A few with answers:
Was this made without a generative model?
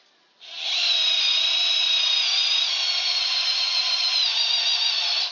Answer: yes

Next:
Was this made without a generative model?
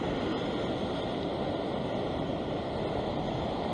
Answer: yes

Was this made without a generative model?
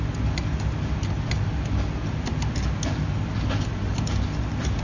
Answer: yes